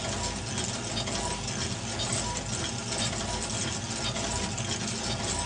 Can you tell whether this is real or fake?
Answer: real